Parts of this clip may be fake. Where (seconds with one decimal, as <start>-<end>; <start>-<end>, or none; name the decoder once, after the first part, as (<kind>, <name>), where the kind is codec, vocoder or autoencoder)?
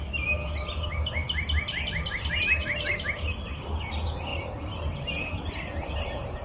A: none